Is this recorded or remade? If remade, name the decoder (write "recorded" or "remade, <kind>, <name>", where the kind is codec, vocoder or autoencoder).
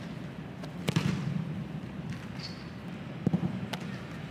recorded